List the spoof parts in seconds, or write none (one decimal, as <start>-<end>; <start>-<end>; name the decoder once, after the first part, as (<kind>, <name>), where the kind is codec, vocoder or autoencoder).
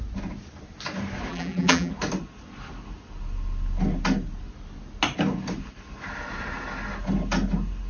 1.3-1.9 (vocoder, BigVGAN v2)